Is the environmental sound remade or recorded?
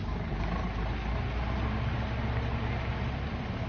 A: recorded